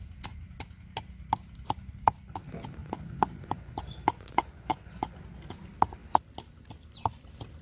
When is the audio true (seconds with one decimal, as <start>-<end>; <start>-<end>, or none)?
0.0-2.8; 5.2-7.6